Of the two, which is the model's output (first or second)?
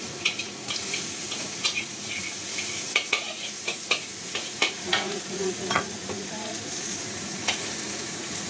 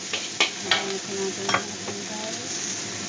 first